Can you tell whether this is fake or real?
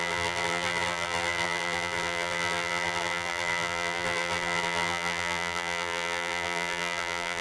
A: fake